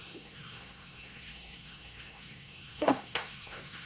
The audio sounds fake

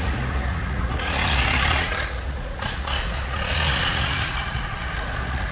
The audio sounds fake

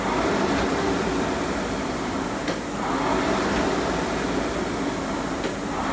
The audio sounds real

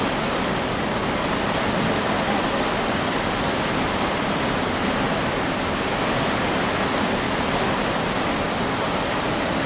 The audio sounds real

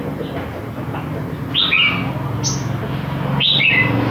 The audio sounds real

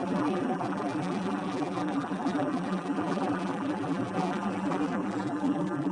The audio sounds fake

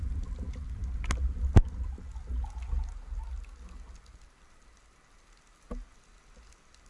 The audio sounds real